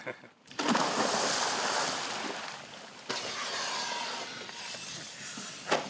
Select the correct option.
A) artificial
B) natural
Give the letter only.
B